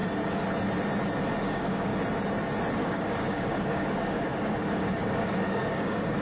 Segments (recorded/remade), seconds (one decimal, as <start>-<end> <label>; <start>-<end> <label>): 0.0-1.4 recorded; 1.4-1.9 remade; 1.9-2.8 recorded; 2.8-6.2 remade